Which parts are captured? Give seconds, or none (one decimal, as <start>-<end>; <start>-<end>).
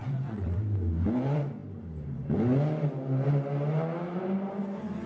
0.6-5.1